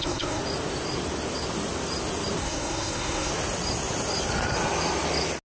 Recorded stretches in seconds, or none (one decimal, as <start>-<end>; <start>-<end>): 0.4-2.4; 3.3-5.5